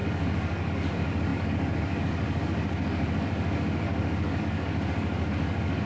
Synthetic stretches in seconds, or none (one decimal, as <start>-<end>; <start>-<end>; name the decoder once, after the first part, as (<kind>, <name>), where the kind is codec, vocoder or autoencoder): 0.0-5.9 (codec, DAC)